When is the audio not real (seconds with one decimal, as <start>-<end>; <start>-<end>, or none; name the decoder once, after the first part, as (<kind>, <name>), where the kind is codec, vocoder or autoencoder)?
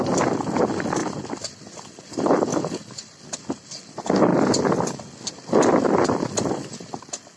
none